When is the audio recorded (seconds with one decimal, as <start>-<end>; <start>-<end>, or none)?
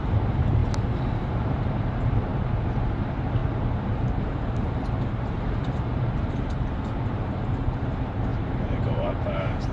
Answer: 0.6-1.2